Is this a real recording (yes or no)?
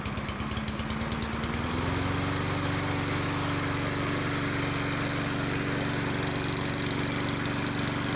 yes